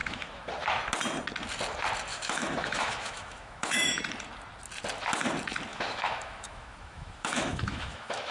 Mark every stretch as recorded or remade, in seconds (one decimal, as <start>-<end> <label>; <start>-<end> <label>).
0.0-0.5 remade; 0.5-2.1 recorded; 2.1-4.0 remade; 4.0-5.7 recorded; 5.7-8.3 remade